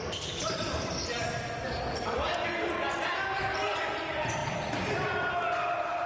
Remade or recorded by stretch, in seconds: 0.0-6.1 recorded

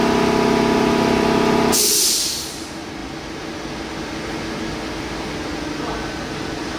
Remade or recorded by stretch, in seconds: 0.0-6.8 recorded